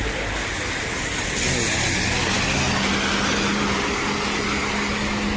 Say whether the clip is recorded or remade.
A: recorded